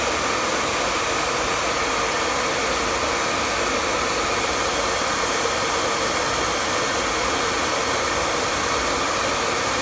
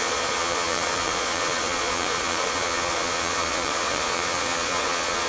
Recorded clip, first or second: first